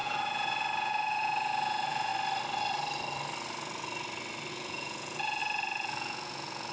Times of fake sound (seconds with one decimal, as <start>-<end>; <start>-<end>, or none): 0.0-2.1; 4.5-6.7